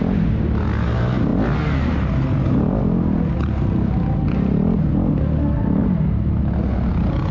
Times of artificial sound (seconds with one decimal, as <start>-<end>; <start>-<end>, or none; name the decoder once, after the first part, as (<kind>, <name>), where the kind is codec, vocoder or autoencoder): none